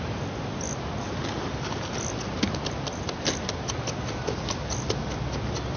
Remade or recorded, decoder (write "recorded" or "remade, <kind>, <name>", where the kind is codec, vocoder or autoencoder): recorded